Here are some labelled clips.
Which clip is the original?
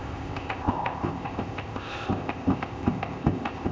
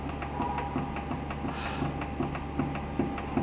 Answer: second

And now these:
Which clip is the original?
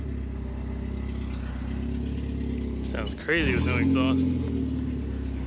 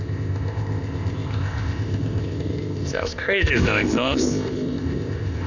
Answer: first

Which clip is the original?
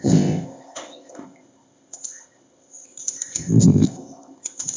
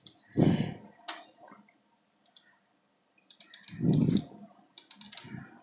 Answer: second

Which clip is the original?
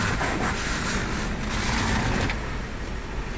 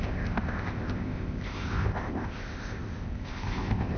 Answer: first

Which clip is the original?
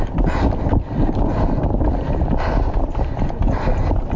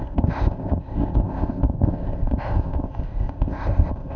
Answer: first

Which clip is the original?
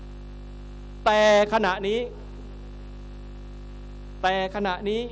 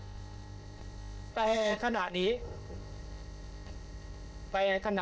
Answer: first